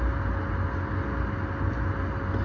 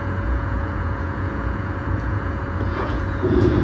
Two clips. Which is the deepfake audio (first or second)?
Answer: second